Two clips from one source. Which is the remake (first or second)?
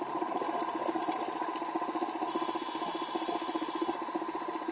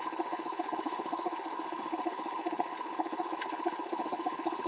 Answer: second